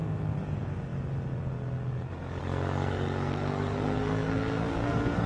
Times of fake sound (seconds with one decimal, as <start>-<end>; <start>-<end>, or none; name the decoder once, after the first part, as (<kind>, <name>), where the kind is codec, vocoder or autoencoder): 2.4-5.3 (codec, SNAC)